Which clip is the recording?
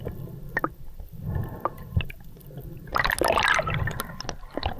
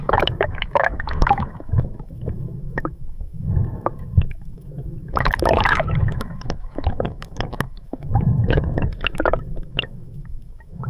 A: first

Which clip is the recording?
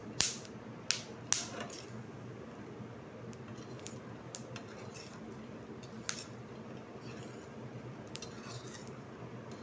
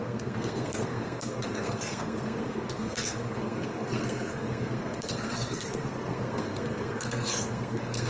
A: first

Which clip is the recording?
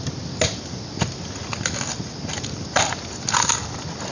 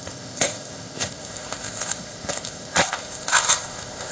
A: first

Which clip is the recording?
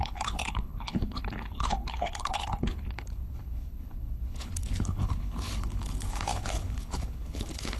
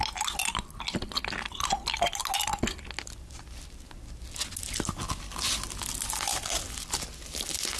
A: second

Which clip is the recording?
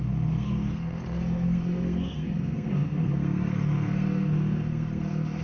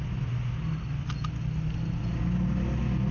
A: second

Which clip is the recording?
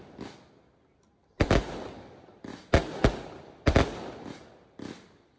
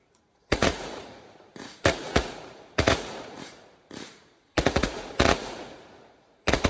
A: first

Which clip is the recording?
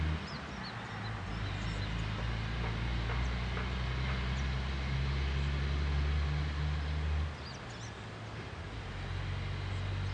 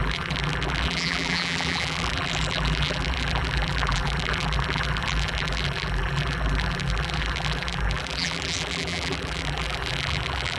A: first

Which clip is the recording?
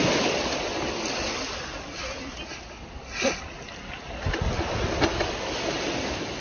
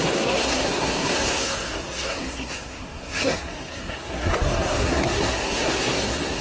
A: first